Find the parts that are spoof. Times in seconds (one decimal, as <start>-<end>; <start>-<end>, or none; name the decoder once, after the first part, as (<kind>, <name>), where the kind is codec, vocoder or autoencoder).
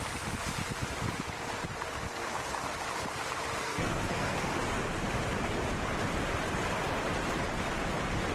3.6-4.5 (codec, SNAC)